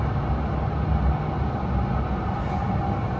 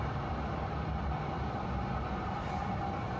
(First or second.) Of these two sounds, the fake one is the second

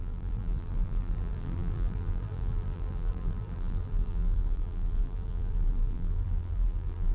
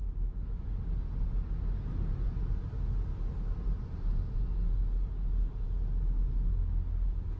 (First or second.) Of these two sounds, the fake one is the first